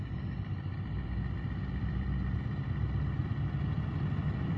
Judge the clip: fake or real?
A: fake